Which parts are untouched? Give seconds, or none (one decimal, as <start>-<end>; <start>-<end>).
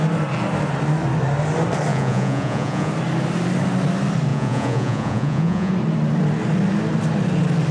0.0-1.9; 2.9-4.3; 5.7-7.7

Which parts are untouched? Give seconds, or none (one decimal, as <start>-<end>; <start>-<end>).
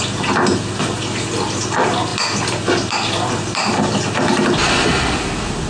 0.0-5.7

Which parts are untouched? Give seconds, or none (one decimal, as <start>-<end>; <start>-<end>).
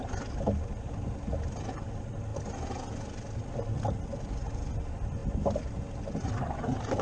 0.0-7.0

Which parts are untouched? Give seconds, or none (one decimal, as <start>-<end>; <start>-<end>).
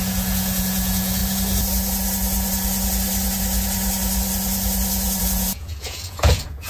1.2-5.2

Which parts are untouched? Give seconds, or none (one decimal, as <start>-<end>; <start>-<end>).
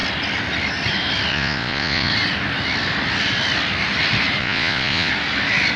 0.0-1.3; 2.1-4.4; 5.1-5.8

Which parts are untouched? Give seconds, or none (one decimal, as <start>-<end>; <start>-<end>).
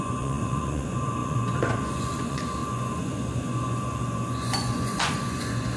none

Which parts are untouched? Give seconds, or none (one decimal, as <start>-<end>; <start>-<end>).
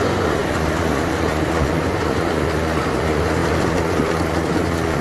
none